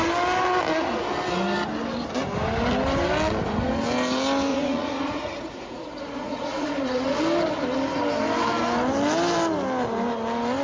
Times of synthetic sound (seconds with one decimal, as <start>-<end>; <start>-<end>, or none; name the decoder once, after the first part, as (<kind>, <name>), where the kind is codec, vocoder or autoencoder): 4.5-7.2 (vocoder, Vocos)